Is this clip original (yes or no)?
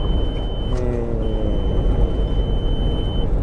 yes